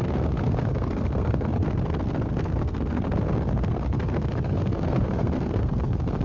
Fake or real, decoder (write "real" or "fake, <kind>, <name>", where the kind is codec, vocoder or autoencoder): fake, codec, SNAC